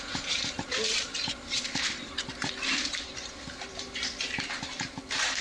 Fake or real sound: fake